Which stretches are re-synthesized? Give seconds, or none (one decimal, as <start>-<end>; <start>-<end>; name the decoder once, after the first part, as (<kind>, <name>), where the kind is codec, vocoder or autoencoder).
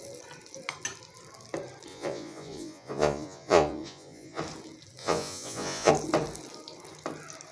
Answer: 1.9-4.4 (vocoder, Vocos); 5.0-5.9